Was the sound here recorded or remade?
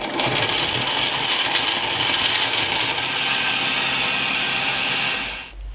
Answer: recorded